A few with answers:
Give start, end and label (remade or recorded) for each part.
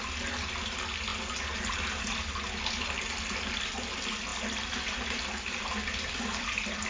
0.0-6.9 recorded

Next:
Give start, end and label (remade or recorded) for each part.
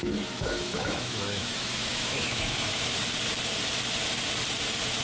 0.0-3.0 remade; 3.0-5.0 recorded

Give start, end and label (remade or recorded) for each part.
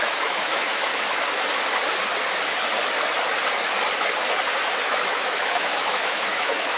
0.0-0.9 remade; 0.9-4.8 recorded; 4.8-6.8 remade